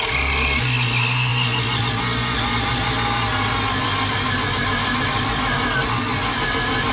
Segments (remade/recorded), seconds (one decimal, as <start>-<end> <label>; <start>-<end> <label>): 0.0-6.9 recorded